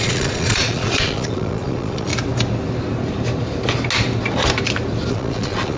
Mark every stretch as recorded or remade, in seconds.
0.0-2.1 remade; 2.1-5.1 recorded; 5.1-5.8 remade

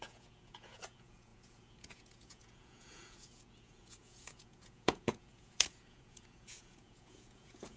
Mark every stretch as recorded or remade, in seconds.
0.0-7.8 remade

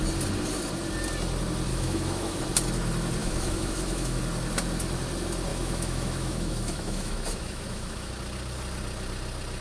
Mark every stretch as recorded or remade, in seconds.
0.0-1.7 recorded; 1.7-2.4 remade; 2.4-3.2 recorded; 3.2-4.2 remade; 4.2-5.5 recorded; 5.5-8.1 remade; 8.1-9.6 recorded

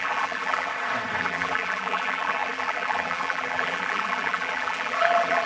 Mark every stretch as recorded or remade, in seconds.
0.0-0.7 remade; 0.7-1.2 recorded; 1.2-5.5 remade